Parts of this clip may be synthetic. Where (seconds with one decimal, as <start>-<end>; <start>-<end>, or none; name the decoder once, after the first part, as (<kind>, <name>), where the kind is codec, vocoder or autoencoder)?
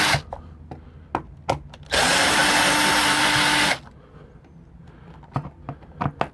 none